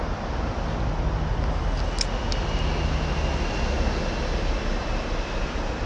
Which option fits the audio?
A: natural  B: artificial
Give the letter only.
A